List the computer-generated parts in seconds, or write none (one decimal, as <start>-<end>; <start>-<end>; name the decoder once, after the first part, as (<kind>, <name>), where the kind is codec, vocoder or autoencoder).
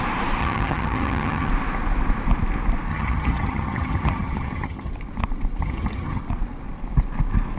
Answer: 0.4-1.5 (vocoder, HiFi-GAN); 2.9-4.9; 5.6-6.2